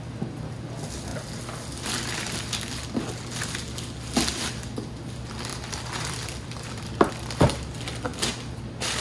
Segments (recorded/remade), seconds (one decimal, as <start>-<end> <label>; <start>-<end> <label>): 0.0-5.5 recorded; 5.5-7.1 remade; 7.1-9.0 recorded